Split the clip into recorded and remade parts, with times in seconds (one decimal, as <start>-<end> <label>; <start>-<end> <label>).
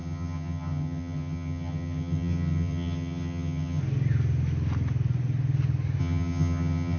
0.0-3.8 remade; 3.8-6.0 recorded; 6.0-7.0 remade